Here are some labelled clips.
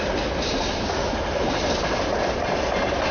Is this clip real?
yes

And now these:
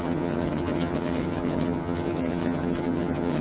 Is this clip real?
no